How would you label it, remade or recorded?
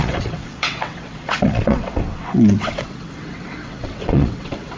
remade